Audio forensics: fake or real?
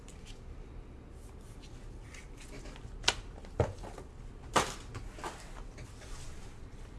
real